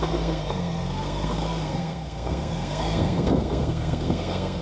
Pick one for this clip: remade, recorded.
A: remade